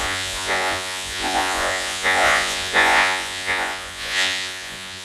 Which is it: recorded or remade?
remade